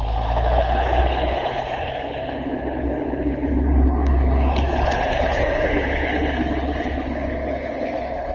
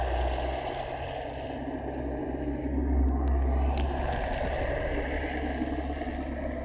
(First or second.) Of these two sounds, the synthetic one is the first